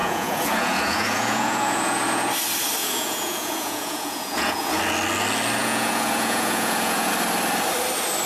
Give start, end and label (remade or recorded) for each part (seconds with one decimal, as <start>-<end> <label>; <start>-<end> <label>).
0.0-2.3 remade; 2.3-2.8 recorded; 2.8-4.8 remade; 4.8-5.6 recorded; 5.6-7.1 remade; 7.1-8.3 recorded

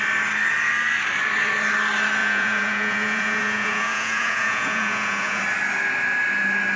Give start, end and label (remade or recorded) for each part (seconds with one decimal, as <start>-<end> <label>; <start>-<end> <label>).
0.0-2.2 recorded; 2.2-5.4 remade; 5.4-6.8 recorded

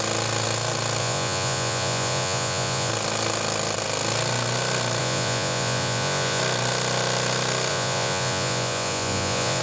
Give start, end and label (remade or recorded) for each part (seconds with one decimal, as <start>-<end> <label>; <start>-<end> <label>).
0.0-1.0 recorded; 1.0-2.9 remade; 2.9-5.0 recorded; 5.0-6.4 remade; 6.4-7.7 recorded; 7.7-9.6 remade

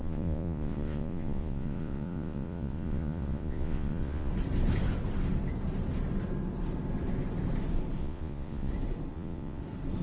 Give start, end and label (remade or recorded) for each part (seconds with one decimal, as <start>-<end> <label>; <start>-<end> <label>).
0.0-4.3 remade; 4.3-8.0 recorded; 8.0-8.7 remade; 8.7-9.1 recorded; 9.1-9.6 remade; 9.6-10.0 recorded

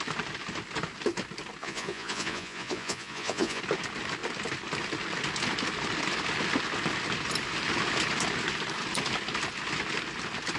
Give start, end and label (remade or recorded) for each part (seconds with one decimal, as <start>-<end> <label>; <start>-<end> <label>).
0.0-1.6 recorded; 1.6-3.6 remade; 3.6-10.6 recorded

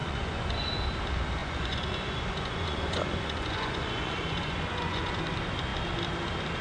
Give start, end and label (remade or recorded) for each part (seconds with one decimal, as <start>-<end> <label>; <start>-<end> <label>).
0.0-0.6 remade; 0.6-1.4 recorded; 1.4-5.2 remade; 5.2-6.6 recorded

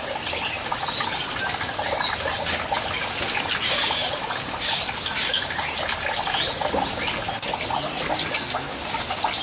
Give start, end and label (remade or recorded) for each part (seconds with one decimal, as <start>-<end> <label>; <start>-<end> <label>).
0.0-9.4 recorded

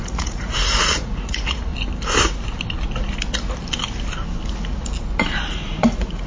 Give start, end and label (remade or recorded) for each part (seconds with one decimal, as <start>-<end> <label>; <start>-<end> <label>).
0.0-1.7 remade; 1.7-5.5 recorded; 5.5-6.3 remade